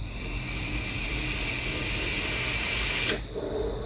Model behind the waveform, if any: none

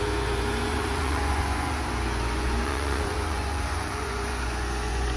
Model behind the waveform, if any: vocoder, Vocos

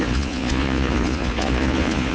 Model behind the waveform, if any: vocoder, Vocos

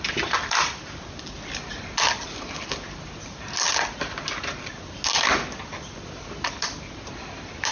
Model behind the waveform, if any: none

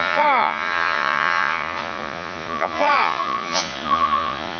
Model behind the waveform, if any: vocoder, Vocos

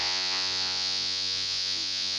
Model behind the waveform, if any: vocoder, Vocos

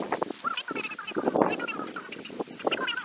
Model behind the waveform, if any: none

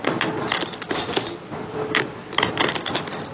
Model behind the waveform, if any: none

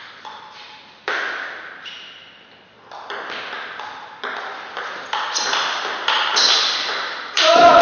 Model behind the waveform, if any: none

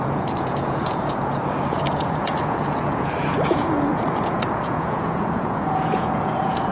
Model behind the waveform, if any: vocoder, Vocos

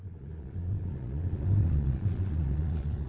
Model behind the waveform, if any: vocoder, Vocos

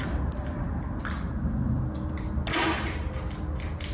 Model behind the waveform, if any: none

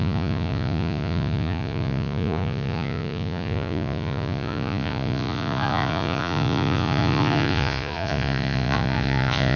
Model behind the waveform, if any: vocoder, Vocos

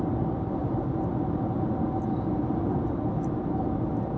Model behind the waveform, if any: none